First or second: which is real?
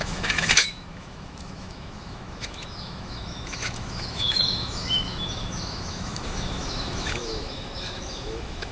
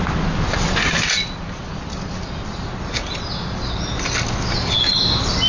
second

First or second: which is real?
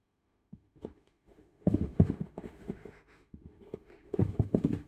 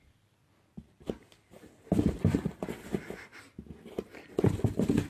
second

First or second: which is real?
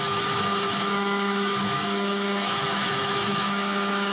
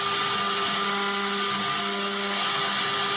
second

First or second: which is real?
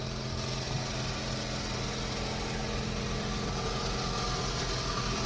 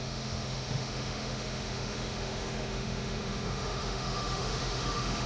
first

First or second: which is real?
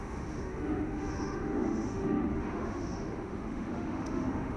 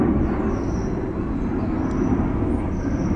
second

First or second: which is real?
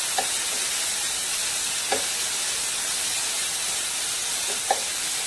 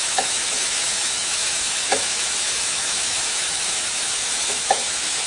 first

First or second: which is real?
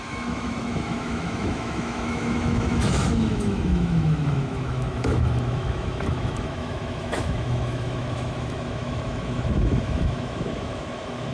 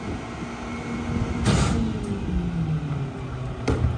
second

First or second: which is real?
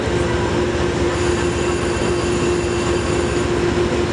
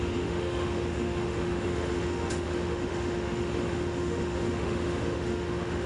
first